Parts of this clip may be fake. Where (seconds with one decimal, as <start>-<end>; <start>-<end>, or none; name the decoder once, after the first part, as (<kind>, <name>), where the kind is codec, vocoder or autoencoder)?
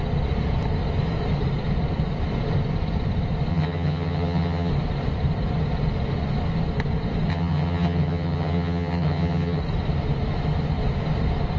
3.5-4.7 (vocoder, HiFi-GAN); 7.3-9.6